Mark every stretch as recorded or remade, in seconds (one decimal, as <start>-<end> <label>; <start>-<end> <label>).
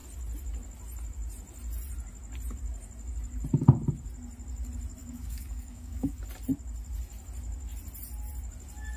0.0-5.0 recorded; 5.0-6.2 remade; 6.2-9.0 recorded